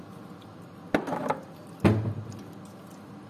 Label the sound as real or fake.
real